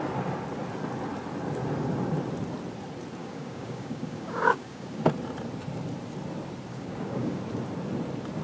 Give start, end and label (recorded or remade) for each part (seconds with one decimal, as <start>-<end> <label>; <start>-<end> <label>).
0.0-3.2 recorded; 3.2-5.0 remade; 5.0-6.7 recorded; 6.7-7.4 remade; 7.4-8.4 recorded